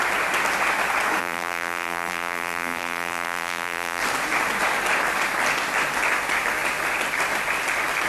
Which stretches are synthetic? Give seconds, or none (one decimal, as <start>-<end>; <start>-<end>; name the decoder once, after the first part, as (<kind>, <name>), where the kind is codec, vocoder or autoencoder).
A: 1.2-4.0 (vocoder, BigVGAN v2)